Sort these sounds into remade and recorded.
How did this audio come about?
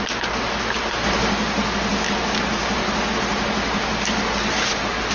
recorded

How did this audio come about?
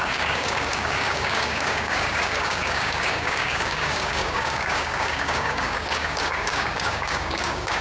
remade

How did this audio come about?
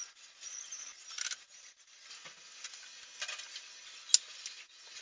recorded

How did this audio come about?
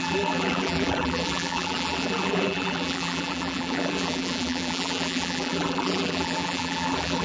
remade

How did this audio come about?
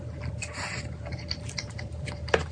remade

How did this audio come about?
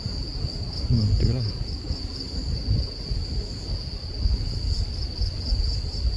recorded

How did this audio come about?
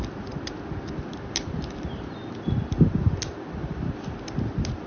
recorded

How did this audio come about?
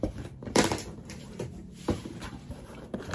remade